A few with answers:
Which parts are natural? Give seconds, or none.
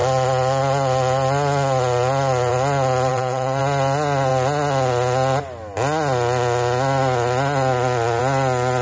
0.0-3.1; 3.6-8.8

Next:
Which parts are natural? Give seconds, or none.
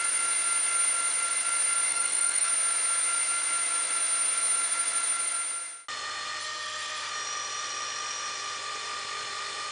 0.0-1.9; 2.5-6.4; 7.1-9.7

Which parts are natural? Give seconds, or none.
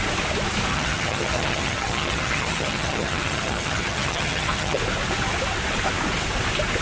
0.0-0.7; 4.8-6.8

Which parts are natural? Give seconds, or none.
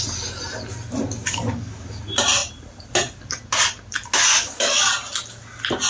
0.0-1.2; 2.0-4.3; 4.9-5.9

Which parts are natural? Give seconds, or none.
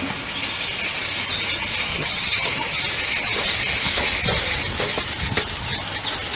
0.0-1.9; 2.8-6.4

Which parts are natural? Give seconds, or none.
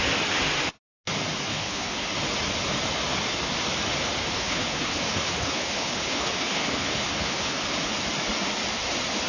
0.0-1.5; 2.1-4.2; 7.9-9.3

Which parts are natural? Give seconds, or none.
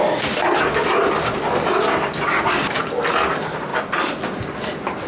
0.0-5.1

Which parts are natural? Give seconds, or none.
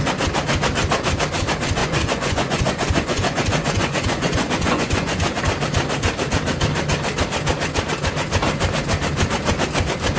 0.0-1.8; 5.4-10.2